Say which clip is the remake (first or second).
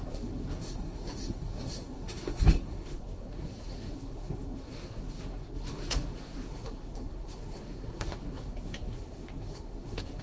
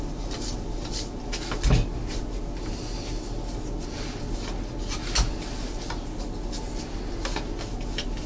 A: first